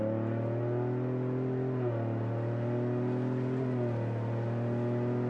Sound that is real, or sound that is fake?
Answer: real